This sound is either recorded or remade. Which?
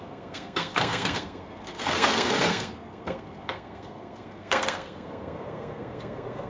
remade